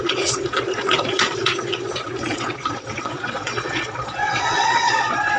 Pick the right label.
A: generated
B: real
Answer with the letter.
A